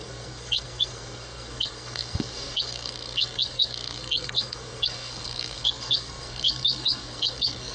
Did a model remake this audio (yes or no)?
yes